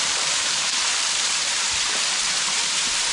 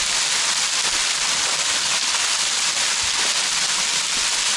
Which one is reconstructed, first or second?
first